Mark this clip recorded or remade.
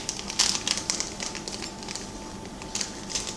recorded